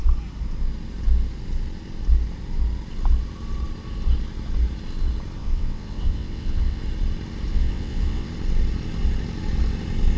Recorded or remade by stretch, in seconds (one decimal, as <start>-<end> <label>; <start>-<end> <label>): 0.0-5.4 recorded; 5.4-6.8 remade; 6.8-7.5 recorded; 7.5-8.3 remade; 8.3-10.2 recorded